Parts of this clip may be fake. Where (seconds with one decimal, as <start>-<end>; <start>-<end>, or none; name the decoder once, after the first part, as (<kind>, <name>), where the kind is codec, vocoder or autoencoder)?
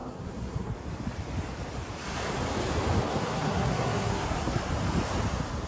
0.0-0.7 (codec, SNAC); 3.1-4.6